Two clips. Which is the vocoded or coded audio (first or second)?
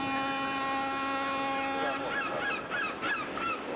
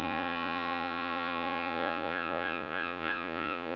second